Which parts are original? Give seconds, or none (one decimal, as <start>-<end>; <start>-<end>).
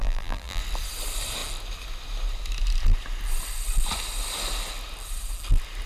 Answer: 0.6-5.9